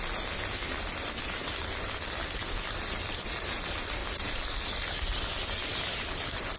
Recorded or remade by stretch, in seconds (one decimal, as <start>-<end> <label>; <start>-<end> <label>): 0.0-6.6 recorded